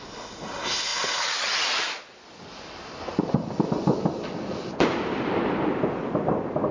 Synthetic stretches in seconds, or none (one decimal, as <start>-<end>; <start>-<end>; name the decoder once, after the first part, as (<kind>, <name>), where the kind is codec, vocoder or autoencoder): none